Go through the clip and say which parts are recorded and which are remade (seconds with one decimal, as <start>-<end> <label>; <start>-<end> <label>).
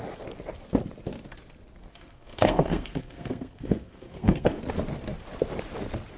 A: 0.0-1.9 recorded; 1.9-4.6 remade; 4.6-6.2 recorded